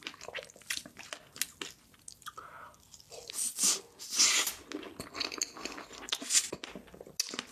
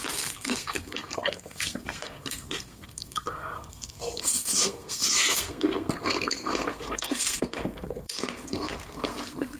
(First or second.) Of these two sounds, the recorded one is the first